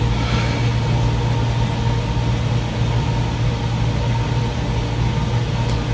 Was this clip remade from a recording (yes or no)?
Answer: no